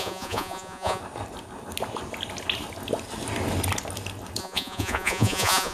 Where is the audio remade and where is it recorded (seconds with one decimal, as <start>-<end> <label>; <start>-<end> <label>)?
0.0-1.0 remade; 1.0-4.4 recorded; 4.4-5.7 remade